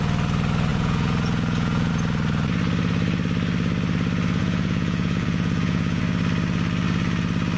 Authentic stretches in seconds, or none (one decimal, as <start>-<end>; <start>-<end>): 0.0-0.7; 1.9-4.4; 6.0-7.6